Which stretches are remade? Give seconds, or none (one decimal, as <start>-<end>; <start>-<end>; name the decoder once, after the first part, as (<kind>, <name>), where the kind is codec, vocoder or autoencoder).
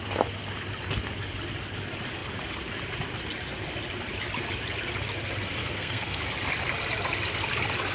5.6-6.2 (codec, SNAC)